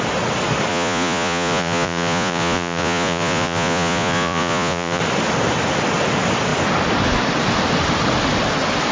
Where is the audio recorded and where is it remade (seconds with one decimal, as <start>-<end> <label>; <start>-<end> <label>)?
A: 0.0-0.7 recorded; 0.7-5.0 remade; 5.0-8.9 recorded